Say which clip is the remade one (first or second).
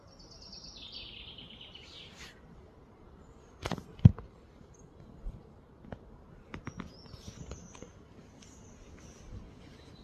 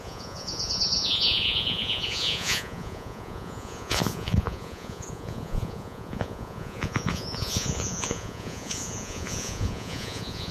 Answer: second